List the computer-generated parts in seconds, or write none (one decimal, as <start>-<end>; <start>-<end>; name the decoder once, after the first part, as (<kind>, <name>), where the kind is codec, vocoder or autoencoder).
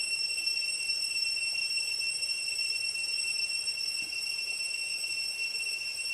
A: none